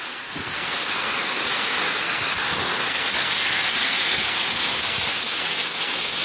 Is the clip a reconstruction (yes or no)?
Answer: yes